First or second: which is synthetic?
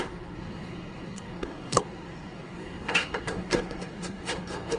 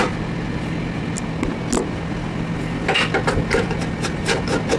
first